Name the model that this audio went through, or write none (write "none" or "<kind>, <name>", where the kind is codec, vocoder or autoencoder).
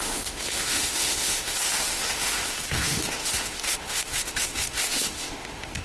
autoencoder, DAC-VAE